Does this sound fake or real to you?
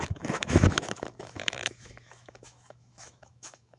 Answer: fake